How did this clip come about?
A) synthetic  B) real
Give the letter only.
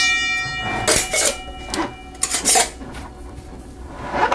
B